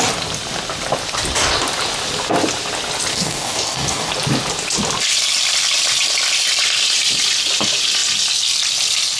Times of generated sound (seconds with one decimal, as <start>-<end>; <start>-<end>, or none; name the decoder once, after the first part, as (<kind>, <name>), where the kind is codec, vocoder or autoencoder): 3.1-4.1 (codec, DAC)